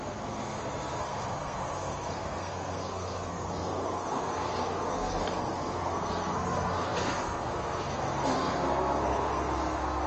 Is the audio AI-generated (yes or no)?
yes